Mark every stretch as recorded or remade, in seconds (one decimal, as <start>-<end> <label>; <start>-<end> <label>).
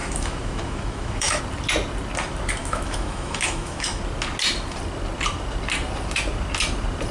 0.0-1.4 remade; 1.4-2.6 recorded; 2.6-4.0 remade; 4.0-7.1 recorded